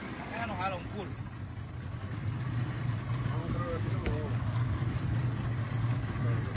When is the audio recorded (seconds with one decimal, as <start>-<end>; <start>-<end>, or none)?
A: 0.5-3.4; 5.0-6.6